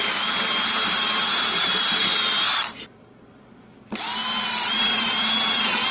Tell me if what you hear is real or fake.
real